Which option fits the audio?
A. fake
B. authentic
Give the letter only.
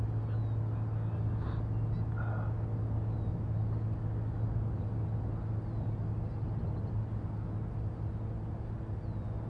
B